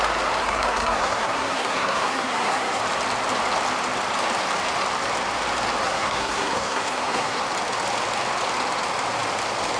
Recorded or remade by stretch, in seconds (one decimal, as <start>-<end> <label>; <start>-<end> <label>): 0.0-0.4 recorded; 0.4-2.8 remade; 2.8-5.8 recorded; 5.8-7.4 remade; 7.4-9.8 recorded